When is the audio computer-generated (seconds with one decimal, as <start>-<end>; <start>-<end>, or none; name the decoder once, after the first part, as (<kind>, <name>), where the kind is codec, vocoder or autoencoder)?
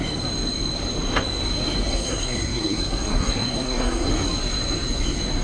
1.9-4.1 (codec, SNAC)